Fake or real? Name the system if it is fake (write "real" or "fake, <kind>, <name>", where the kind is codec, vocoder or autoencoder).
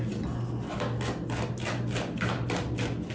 real